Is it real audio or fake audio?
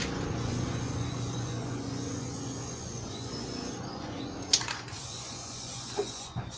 fake